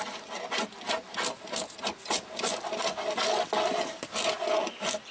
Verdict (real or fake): real